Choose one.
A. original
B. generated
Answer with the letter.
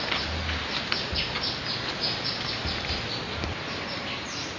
A